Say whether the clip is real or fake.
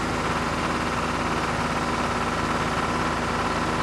real